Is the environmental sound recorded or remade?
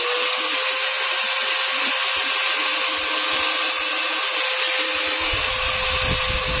recorded